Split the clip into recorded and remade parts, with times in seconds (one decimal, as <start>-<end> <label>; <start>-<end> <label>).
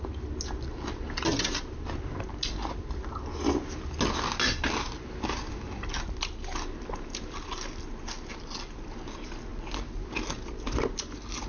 0.0-11.5 recorded